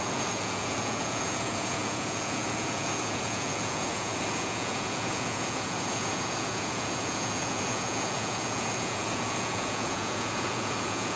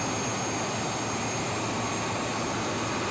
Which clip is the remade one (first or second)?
first